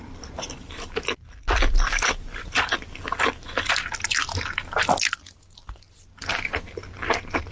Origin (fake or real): real